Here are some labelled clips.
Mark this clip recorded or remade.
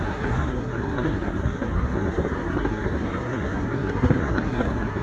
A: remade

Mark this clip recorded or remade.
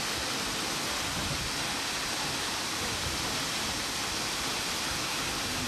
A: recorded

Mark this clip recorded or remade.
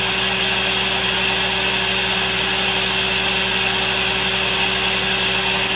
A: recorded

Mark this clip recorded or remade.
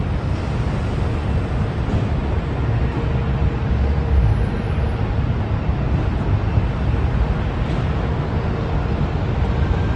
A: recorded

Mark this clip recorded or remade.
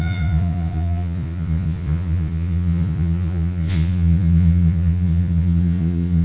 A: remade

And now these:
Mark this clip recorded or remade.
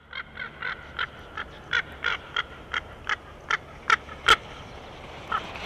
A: recorded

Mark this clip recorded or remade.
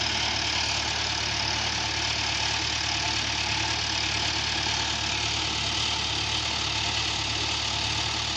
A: recorded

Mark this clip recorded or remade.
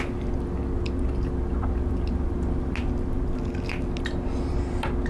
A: recorded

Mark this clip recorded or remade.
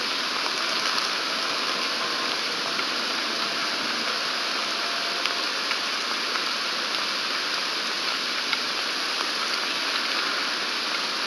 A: recorded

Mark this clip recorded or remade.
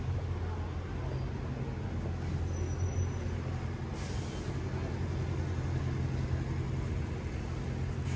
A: recorded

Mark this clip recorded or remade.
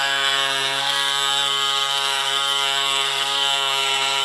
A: remade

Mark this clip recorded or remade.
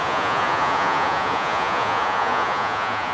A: remade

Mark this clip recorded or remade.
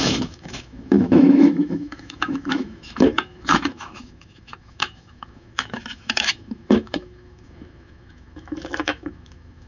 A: remade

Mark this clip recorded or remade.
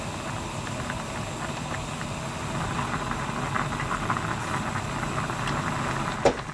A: recorded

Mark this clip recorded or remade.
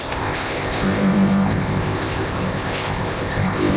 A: remade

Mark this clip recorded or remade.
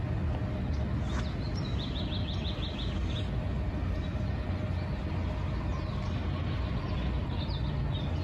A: recorded